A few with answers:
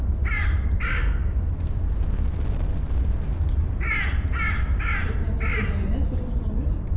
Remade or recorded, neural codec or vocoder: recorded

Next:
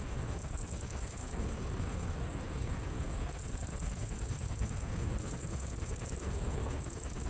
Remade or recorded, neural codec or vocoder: remade, codec, SNAC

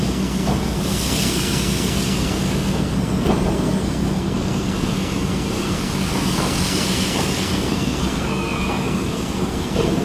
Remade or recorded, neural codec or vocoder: remade, codec, SNAC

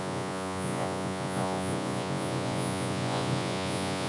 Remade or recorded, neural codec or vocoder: remade, vocoder, Vocos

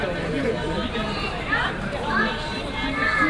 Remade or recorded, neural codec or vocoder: remade, vocoder, BigVGAN v2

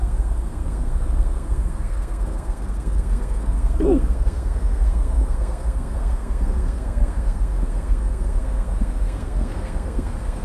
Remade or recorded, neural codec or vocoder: remade, codec, SNAC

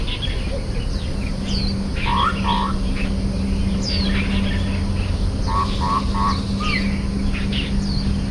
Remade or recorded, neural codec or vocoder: recorded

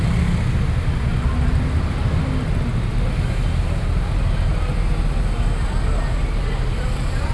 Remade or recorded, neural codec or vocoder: recorded